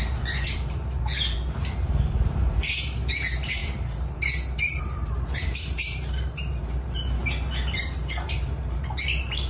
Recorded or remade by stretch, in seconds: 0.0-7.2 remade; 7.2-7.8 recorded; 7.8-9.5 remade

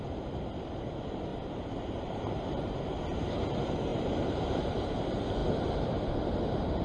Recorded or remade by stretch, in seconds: 0.0-1.3 recorded; 1.3-2.8 remade; 2.8-3.9 recorded; 3.9-4.9 remade; 4.9-6.8 recorded

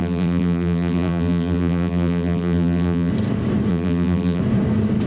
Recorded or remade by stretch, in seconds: 0.0-3.1 remade; 3.1-3.7 recorded; 3.7-4.4 remade; 4.4-5.1 recorded

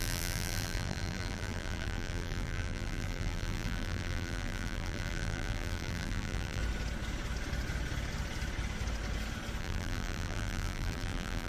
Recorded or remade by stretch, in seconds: 0.0-6.6 remade; 6.6-9.6 recorded; 9.6-11.5 remade